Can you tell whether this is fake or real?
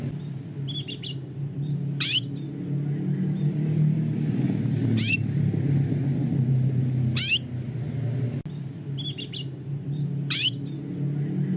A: real